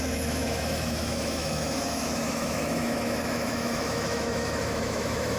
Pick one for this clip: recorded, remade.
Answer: remade